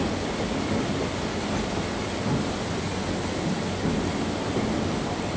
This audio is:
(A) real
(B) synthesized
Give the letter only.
A